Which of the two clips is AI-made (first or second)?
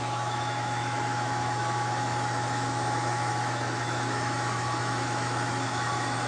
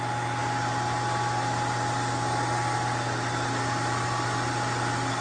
first